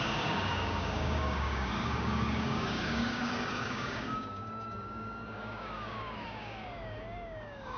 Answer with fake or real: fake